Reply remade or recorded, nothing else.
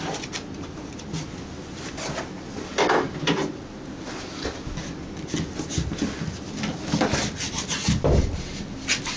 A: recorded